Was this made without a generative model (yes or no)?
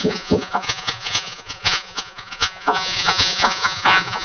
no